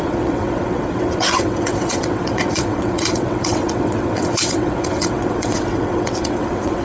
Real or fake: fake